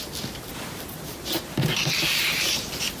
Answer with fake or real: real